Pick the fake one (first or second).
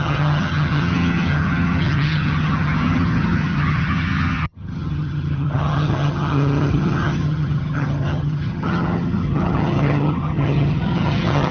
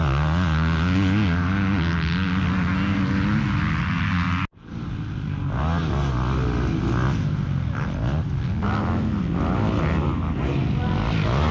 first